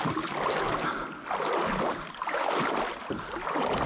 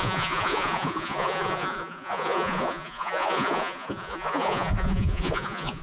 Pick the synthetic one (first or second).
second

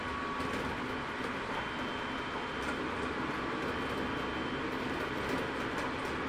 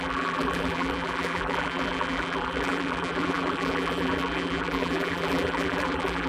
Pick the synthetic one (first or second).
second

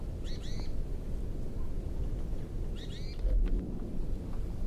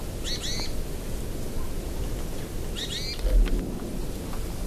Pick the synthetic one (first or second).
first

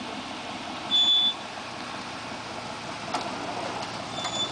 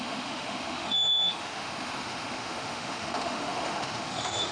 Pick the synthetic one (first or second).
second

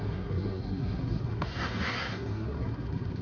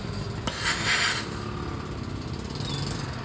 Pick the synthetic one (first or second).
first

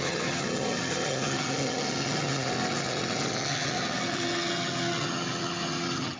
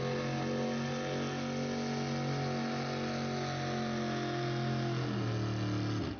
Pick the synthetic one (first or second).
first